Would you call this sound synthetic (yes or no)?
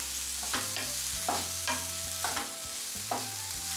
no